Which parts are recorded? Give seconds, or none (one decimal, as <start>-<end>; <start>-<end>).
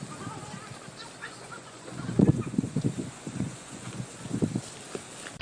0.0-1.2; 4.4-5.4